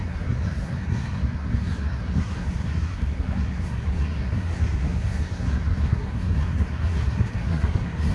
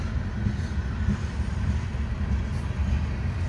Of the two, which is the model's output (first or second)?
first